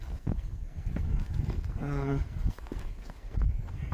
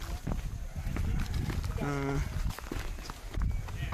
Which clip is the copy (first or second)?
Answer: first